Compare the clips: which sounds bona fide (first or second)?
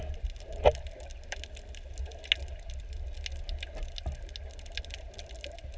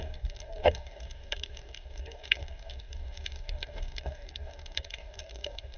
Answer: first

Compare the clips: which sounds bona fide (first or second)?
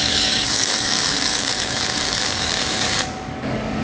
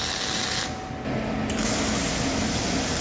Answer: second